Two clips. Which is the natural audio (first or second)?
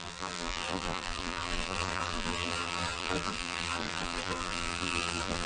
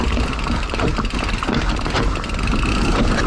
second